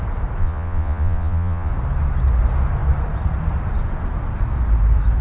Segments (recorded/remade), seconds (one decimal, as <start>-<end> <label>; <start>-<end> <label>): 0.0-0.4 recorded; 0.4-1.7 remade; 1.7-5.2 recorded